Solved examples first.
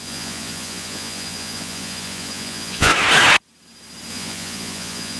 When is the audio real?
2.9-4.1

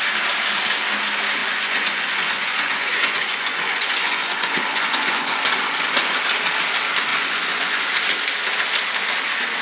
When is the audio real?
0.0-1.4; 6.2-7.1; 7.9-9.6

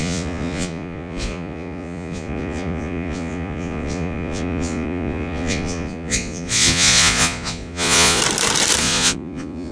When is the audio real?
8.2-8.8

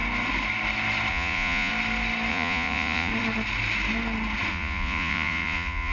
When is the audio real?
0.0-1.1; 1.7-2.3; 3.1-4.5

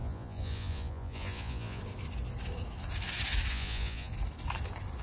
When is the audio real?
1.8-3.5; 4.1-5.0